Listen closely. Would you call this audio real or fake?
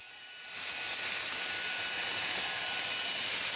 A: real